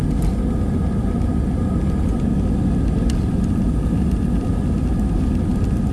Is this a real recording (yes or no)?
yes